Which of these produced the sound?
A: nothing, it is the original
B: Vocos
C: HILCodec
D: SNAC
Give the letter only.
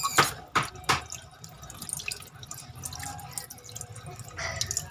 A